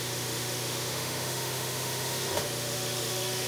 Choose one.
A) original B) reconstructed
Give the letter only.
B